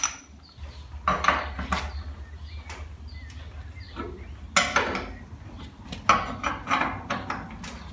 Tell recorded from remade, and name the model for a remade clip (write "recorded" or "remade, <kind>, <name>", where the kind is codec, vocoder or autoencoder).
recorded